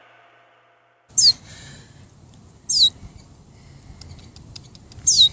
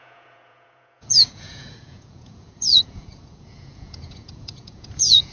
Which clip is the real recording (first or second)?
first